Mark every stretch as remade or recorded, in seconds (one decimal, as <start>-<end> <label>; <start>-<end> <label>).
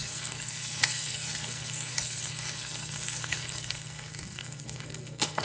0.0-5.4 remade